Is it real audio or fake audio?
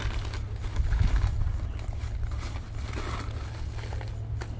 real